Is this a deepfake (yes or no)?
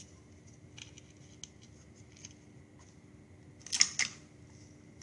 no